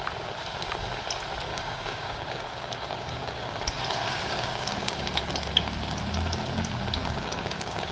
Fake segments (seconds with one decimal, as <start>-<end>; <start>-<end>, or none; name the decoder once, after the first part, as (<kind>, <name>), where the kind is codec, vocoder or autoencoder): 1.5-3.6 (codec, DAC); 4.0-5.2; 7.0-7.9